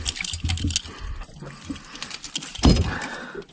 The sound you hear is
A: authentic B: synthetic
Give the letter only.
A